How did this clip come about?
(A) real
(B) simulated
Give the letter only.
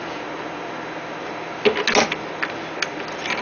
A